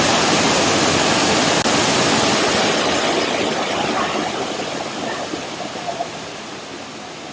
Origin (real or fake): real